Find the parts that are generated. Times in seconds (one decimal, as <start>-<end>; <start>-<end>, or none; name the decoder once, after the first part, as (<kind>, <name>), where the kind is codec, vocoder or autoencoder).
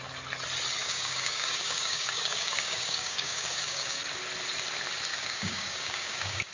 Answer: 0.8-4.0 (codec, DAC); 5.1-6.5